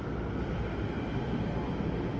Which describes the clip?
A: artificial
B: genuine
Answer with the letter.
B